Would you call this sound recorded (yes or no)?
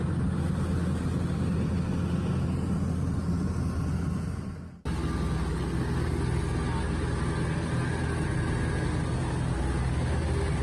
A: yes